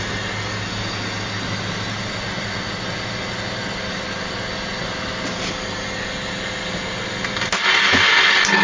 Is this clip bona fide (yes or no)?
yes